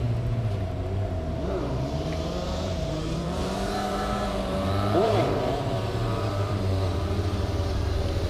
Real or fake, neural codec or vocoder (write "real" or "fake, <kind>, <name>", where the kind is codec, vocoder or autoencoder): fake, vocoder, BigVGAN v2